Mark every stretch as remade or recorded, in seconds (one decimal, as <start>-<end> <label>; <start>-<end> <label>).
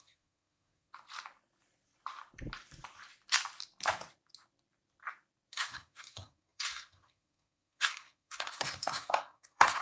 0.0-0.9 remade; 0.9-5.5 recorded; 5.5-9.8 remade